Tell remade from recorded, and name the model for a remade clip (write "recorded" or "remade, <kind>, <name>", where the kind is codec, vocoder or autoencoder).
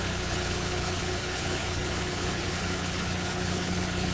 remade, codec, HILCodec